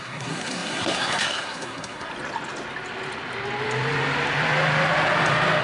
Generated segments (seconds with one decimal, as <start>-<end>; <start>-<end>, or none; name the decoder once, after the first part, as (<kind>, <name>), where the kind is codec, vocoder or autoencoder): 0.0-2.1 (codec, SNAC)